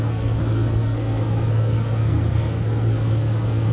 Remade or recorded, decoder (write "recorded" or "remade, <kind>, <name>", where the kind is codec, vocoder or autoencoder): remade, codec, SNAC